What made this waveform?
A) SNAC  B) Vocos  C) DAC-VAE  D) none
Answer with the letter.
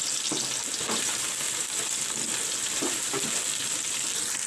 D